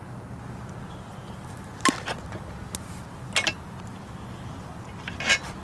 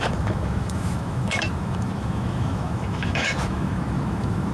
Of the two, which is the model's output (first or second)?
second